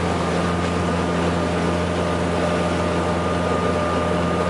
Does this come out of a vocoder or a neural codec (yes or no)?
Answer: no